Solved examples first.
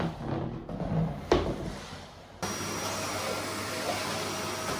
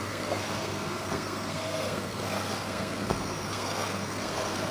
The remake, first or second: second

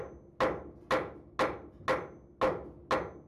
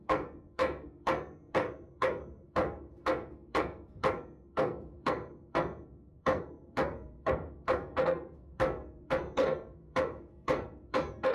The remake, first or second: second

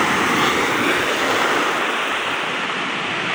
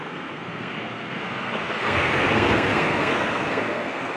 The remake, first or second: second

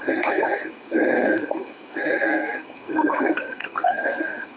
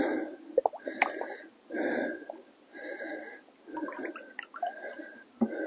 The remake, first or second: first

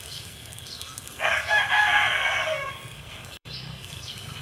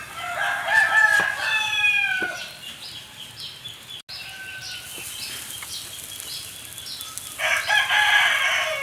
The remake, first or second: first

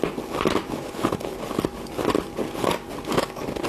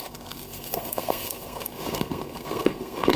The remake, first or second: second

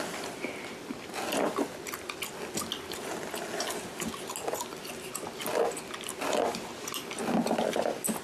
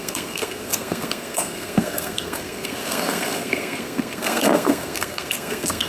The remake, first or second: second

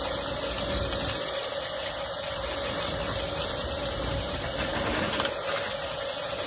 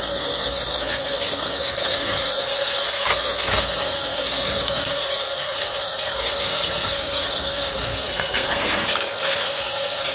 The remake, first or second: second